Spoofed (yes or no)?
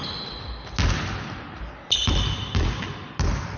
no